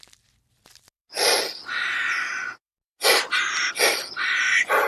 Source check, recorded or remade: recorded